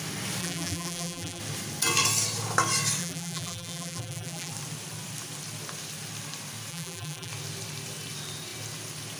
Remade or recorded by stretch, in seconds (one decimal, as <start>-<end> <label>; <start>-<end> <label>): 0.0-0.4 recorded; 0.4-1.4 remade; 1.4-3.0 recorded; 3.0-4.5 remade; 4.5-6.7 recorded; 6.7-7.3 remade; 7.3-9.2 recorded